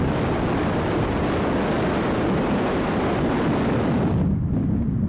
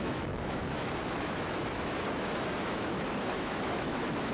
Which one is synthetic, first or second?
second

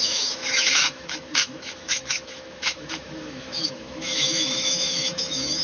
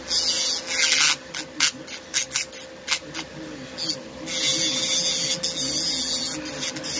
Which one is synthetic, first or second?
first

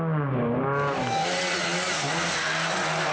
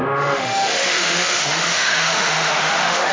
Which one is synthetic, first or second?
second